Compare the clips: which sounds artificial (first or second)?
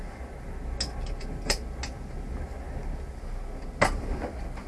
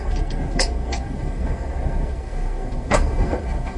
second